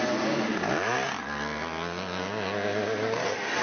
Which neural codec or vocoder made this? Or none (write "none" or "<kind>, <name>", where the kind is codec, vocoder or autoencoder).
none